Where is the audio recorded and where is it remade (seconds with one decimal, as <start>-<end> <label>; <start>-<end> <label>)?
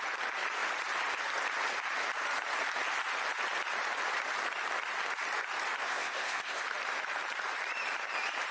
0.0-5.8 recorded; 5.8-6.6 remade; 6.6-8.5 recorded